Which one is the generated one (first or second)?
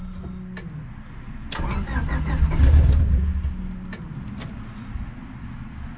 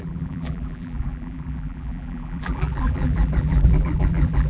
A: second